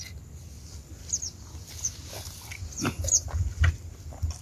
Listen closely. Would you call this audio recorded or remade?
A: recorded